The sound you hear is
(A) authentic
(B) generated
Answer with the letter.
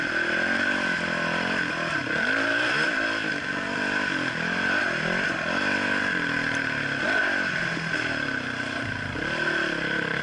A